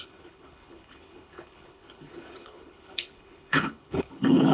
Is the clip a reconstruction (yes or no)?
yes